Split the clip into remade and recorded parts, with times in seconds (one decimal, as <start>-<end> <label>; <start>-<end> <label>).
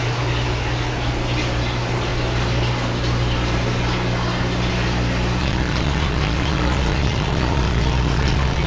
0.0-5.4 recorded; 5.4-8.7 remade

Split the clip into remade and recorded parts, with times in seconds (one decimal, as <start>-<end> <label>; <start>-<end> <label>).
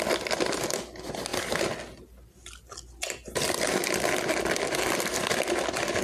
0.0-6.0 recorded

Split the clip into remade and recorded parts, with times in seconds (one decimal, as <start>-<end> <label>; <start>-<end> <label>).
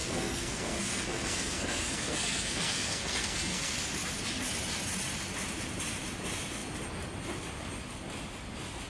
0.0-3.8 remade; 3.8-8.9 recorded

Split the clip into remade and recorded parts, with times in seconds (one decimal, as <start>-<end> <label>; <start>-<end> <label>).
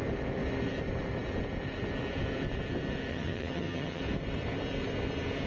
0.0-3.1 recorded; 3.1-4.0 remade; 4.0-5.5 recorded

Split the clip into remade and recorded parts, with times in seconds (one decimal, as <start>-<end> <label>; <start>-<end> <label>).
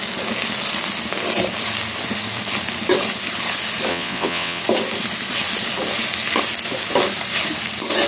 0.0-3.9 recorded; 3.9-4.6 remade; 4.6-8.1 recorded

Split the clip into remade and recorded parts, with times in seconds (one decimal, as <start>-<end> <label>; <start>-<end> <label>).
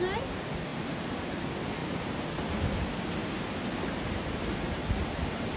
0.0-0.7 recorded; 0.7-1.4 remade; 1.4-1.8 recorded; 1.8-2.7 remade; 2.7-3.2 recorded; 3.2-4.8 remade; 4.8-5.6 recorded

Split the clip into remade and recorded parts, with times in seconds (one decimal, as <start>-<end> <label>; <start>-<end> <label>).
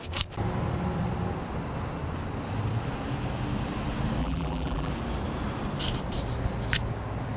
0.0-4.2 recorded; 4.2-4.9 remade; 4.9-7.4 recorded